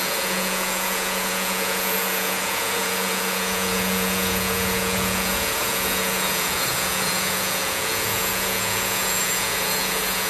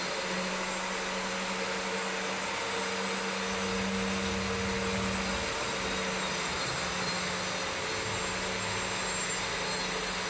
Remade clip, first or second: first